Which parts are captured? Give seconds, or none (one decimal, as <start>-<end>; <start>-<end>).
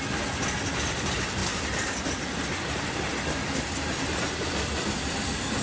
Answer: 0.0-5.6